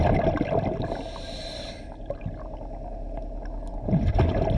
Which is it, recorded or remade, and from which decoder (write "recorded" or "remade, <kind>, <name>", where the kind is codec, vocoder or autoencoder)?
recorded